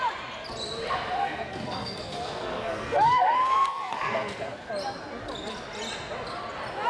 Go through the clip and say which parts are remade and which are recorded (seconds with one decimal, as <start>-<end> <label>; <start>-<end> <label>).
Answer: 0.0-1.2 recorded; 1.2-4.7 remade; 4.7-6.9 recorded